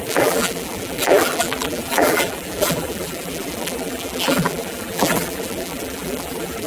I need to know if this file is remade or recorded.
remade